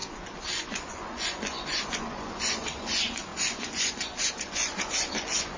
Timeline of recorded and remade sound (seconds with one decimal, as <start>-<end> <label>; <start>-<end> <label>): 0.0-5.6 remade